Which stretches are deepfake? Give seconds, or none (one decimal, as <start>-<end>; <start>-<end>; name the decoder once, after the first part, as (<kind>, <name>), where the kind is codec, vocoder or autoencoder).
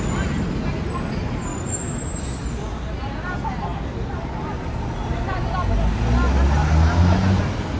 none